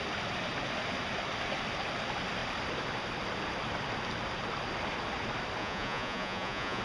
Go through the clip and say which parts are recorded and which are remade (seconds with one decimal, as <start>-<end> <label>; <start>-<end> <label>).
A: 0.0-5.6 recorded; 5.6-6.8 remade